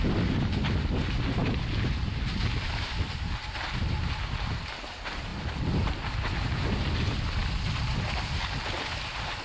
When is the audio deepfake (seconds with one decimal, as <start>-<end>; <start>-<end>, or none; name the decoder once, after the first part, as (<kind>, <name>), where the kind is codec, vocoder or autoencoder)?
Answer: none